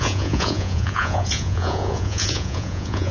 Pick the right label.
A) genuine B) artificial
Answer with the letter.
B